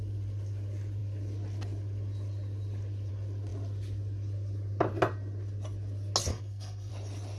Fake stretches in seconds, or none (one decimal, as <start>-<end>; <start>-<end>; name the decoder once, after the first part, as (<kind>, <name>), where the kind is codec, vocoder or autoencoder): 6.3-6.9 (codec, SNAC)